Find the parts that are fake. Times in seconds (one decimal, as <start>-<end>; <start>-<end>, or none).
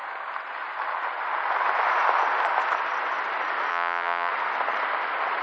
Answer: 3.7-4.3